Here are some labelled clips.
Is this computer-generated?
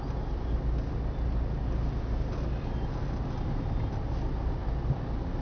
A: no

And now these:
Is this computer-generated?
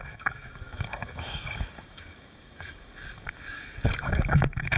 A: yes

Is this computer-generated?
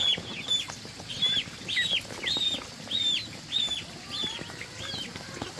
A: no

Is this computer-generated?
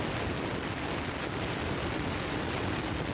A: no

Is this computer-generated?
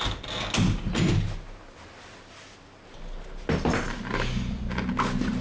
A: no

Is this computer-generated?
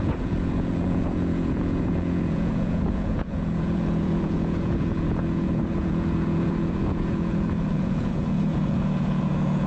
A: yes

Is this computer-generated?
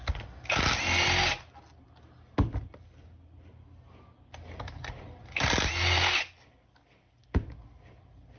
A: no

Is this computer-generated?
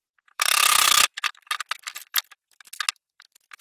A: yes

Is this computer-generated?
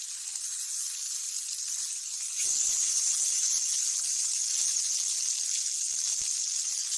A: no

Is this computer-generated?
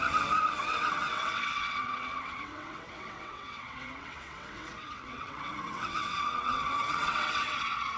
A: yes